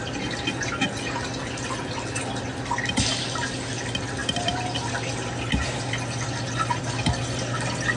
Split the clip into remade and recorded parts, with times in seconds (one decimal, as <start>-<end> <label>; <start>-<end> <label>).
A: 0.0-8.0 recorded